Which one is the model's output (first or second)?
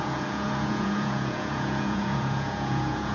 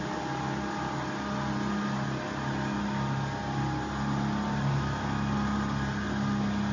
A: first